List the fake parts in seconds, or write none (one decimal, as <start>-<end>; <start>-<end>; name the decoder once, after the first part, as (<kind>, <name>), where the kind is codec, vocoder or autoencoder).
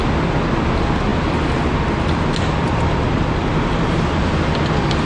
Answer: none